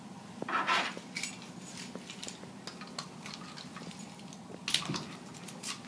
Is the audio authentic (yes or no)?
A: yes